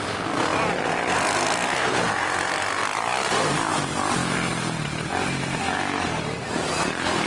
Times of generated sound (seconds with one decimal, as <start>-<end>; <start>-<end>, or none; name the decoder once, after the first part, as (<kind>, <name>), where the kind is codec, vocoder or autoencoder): 2.8-3.7 (vocoder, BigVGAN v2)